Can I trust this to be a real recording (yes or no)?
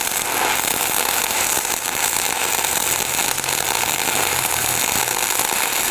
yes